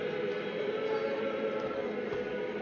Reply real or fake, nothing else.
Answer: real